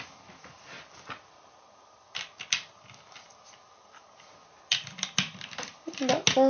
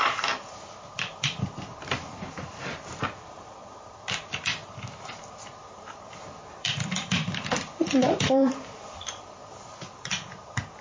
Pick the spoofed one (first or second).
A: second